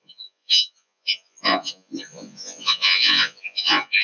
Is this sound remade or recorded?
remade